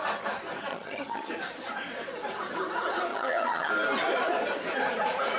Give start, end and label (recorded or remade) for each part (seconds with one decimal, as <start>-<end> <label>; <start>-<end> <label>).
0.0-0.7 recorded; 0.7-1.3 remade; 1.3-3.1 recorded; 3.1-3.7 remade; 3.7-5.4 recorded